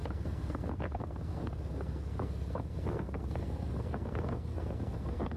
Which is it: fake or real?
fake